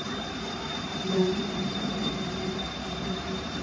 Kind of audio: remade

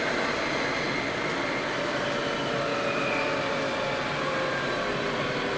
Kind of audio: recorded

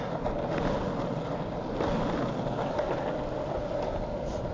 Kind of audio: recorded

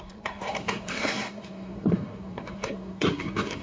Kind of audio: remade